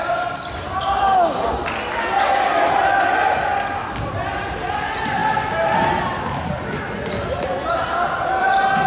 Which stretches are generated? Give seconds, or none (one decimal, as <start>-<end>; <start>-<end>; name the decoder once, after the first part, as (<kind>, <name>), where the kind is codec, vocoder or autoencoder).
none